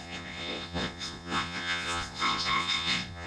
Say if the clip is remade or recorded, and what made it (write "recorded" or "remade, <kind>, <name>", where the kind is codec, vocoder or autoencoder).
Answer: remade, vocoder, Vocos